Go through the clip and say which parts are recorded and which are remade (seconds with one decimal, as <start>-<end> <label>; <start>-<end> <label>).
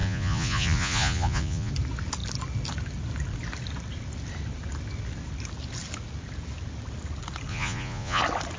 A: 0.0-1.7 remade; 1.7-7.5 recorded; 7.5-8.2 remade; 8.2-8.6 recorded